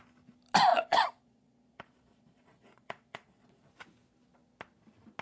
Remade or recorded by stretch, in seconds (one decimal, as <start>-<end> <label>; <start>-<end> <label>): 0.0-0.7 recorded; 0.7-3.7 remade; 3.7-5.2 recorded